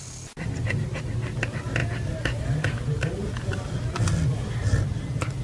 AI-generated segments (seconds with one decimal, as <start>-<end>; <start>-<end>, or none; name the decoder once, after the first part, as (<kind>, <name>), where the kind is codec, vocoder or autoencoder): none